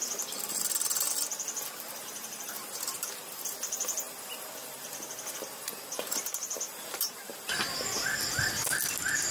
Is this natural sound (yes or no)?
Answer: yes